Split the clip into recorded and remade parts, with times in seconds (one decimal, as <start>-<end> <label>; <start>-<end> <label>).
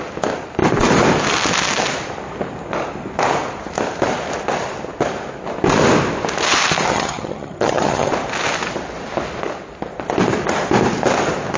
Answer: 0.0-6.9 recorded; 6.9-8.1 remade; 8.1-11.6 recorded